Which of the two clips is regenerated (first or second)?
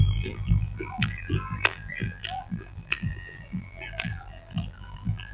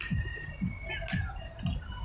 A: first